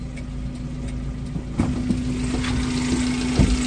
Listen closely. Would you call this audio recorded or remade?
recorded